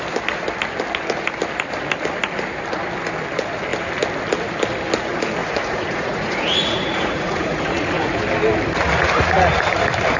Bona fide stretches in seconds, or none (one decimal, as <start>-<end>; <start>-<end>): 0.0-5.4; 8.2-10.2

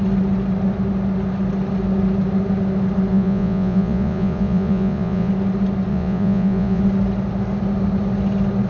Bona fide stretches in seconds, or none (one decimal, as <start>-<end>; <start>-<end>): 0.0-3.1; 5.3-5.9; 6.8-8.7

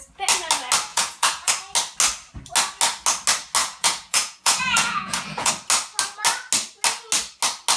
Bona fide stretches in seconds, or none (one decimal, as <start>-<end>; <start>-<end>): 0.0-0.9; 1.5-3.6; 5.5-7.8